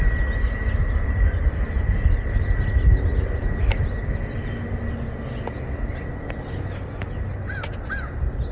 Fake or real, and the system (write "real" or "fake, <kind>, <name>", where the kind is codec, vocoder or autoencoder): real